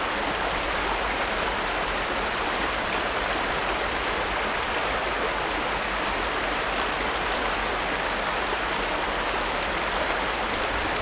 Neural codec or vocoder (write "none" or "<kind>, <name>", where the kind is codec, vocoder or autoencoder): none